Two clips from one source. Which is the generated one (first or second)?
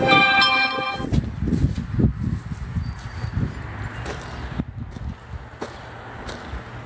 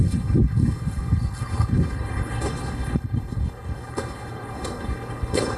second